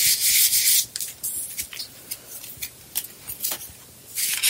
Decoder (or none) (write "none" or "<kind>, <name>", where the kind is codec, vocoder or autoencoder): none